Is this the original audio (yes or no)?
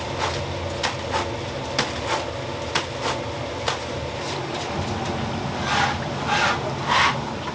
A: yes